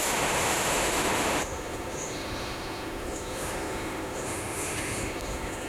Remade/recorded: remade